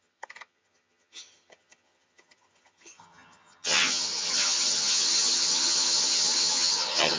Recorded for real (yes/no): no